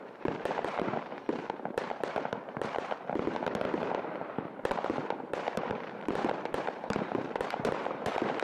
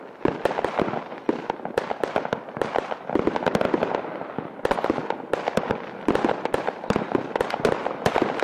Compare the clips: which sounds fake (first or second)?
first